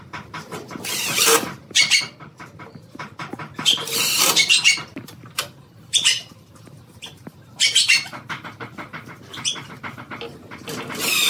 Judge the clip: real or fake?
fake